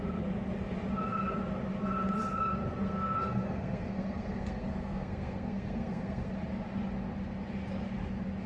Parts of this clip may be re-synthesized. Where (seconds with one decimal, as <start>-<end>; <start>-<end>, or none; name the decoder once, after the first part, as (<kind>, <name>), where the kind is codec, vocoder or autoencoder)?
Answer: 2.8-6.3 (codec, SNAC)

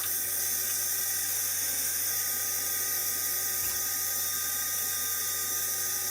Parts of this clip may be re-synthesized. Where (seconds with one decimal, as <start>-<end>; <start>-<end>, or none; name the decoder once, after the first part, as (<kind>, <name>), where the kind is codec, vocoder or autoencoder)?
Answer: 1.3-2.1 (autoencoder, DAC-VAE)

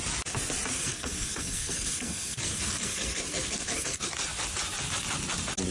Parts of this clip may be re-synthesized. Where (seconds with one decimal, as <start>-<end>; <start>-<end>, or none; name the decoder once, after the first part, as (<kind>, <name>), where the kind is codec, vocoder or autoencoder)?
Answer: 0.7-4.1 (codec, SNAC)